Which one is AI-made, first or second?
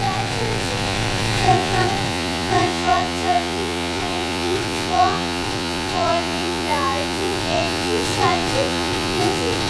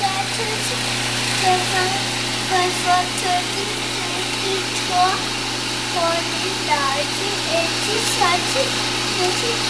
first